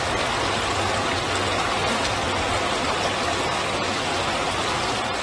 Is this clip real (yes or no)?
yes